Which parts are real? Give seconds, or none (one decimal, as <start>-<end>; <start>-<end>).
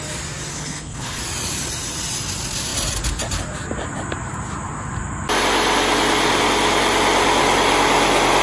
0.0-0.5; 1.2-8.4